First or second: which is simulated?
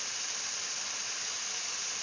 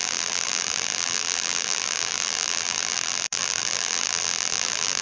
second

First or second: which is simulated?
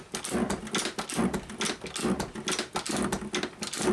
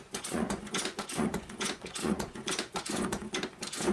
second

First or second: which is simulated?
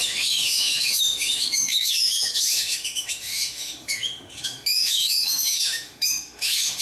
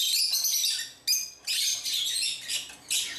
first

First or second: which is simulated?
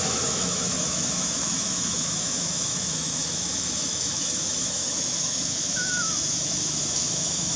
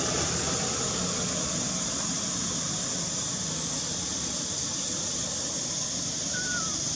first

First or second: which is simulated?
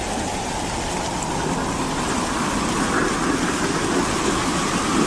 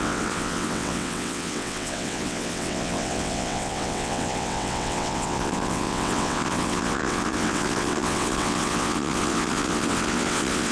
second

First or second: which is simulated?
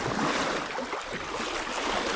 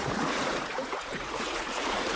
second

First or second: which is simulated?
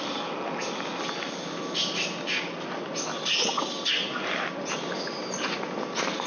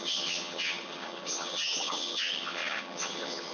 second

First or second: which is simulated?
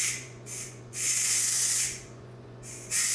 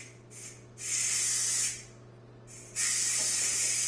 first